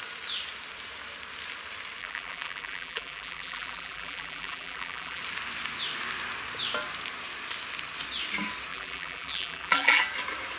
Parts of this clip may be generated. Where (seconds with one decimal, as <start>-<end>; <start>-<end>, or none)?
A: 2.0-5.2; 8.7-10.0